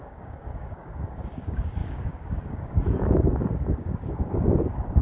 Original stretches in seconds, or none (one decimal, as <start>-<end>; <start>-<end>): none